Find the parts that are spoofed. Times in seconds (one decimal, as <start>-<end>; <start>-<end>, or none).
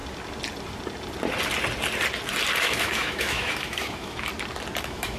2.6-4.3; 4.8-5.2